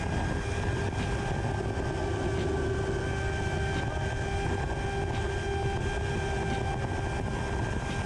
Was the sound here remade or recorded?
recorded